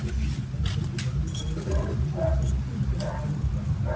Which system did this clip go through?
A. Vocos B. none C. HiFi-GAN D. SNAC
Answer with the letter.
B